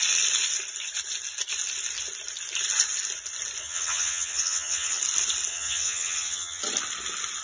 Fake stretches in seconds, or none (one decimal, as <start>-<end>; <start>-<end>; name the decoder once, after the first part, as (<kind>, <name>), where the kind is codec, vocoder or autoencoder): 3.6-5.0 (vocoder, HiFi-GAN); 5.5-6.6